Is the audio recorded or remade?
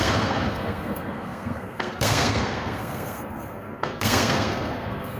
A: remade